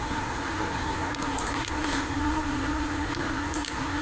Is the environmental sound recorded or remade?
remade